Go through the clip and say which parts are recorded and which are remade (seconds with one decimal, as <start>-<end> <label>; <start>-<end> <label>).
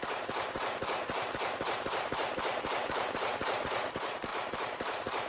0.0-5.3 remade